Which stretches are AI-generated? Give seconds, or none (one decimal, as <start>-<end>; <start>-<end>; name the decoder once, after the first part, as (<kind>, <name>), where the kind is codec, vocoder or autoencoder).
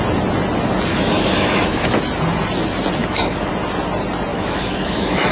0.9-2.0 (autoencoder, DAC-VAE); 3.0-3.5; 4.3-5.3